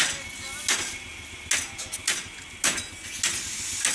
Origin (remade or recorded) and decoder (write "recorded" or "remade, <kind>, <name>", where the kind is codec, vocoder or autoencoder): recorded